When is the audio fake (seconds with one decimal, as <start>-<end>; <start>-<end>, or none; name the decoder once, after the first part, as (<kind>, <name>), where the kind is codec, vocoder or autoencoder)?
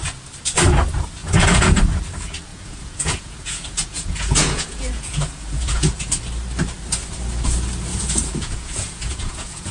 1.2-1.8 (vocoder, Vocos); 2.5-6.1; 7.9-9.7